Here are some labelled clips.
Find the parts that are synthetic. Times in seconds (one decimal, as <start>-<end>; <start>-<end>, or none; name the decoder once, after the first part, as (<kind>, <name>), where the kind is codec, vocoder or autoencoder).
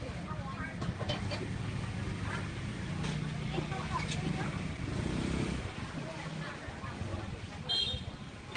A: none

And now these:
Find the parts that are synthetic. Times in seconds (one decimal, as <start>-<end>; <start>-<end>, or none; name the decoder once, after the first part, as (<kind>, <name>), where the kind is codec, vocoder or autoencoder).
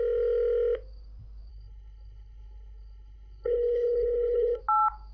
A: 1.5-4.6 (codec, HILCodec)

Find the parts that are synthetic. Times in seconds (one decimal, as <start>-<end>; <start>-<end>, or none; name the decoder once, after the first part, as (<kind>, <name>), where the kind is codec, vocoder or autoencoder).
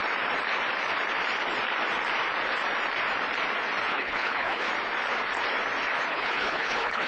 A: 3.9-4.7 (codec, HILCodec); 6.1-7.1